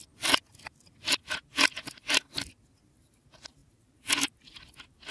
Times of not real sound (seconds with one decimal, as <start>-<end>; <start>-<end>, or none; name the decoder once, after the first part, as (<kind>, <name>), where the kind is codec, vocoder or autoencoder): none